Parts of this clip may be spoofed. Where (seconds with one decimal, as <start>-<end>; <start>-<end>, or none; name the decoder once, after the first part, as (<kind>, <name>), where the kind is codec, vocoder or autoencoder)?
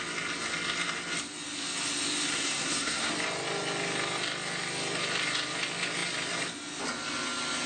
2.3-3.1 (codec, SNAC)